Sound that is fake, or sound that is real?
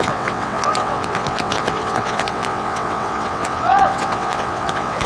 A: fake